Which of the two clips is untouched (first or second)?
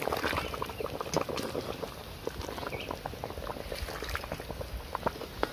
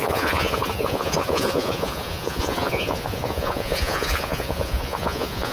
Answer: first